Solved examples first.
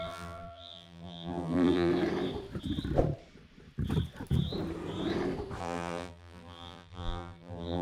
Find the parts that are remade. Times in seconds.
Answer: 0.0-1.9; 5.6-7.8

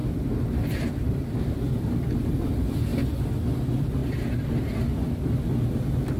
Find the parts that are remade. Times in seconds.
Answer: 0.0-2.9; 3.5-4.0; 5.7-6.2